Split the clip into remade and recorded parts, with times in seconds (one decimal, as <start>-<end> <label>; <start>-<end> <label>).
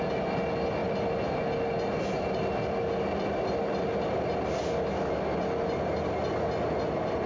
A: 0.0-7.3 recorded